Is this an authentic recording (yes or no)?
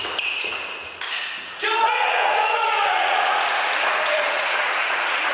no